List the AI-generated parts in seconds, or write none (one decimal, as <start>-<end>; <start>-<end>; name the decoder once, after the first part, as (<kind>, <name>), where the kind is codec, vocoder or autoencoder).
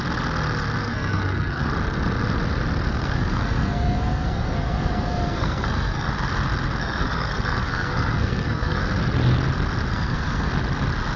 0.8-1.7 (codec, SNAC); 2.9-6.1; 6.8-8.8; 9.9-10.5